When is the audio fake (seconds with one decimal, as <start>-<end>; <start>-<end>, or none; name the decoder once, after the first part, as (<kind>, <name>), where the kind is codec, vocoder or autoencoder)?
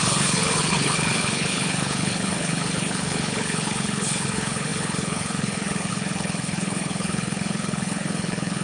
0.0-8.6 (codec, HILCodec)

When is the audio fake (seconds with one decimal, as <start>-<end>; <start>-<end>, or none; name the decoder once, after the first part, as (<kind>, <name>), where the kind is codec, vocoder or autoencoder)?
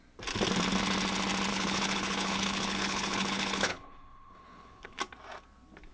1.5-5.0 (codec, HILCodec)